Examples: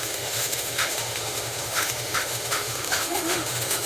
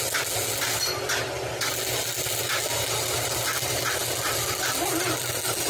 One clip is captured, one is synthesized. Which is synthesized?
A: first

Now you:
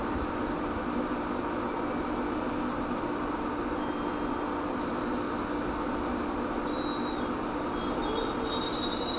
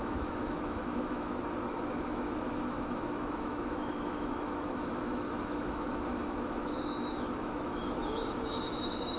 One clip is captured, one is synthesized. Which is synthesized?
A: second